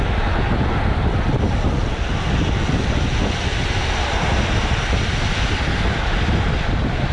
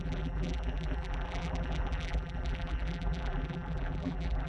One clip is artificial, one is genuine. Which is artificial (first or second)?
second